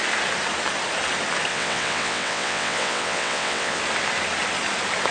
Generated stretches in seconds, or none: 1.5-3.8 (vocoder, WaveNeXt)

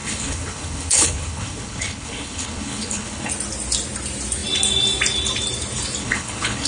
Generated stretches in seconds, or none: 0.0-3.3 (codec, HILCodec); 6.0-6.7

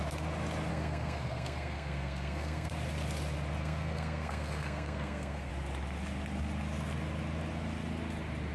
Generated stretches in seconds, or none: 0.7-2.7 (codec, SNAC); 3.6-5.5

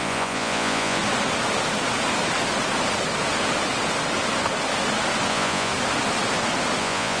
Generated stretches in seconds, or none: 0.0-1.0 (vocoder, Vocos); 5.3-5.7; 6.8-7.2

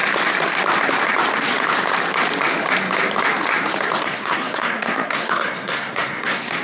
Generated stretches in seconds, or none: 4.0-6.6 (codec, SNAC)